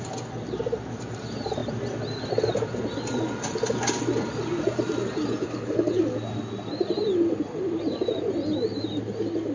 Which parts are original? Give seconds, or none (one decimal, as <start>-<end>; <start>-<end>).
0.0-5.4; 6.0-9.5